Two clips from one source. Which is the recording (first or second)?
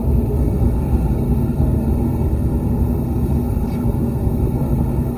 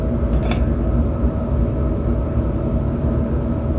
second